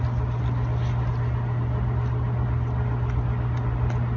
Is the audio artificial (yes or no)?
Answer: no